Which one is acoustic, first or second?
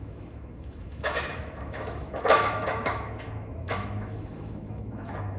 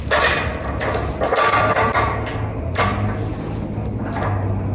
second